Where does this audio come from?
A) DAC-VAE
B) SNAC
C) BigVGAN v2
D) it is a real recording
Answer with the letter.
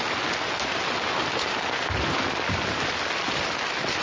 D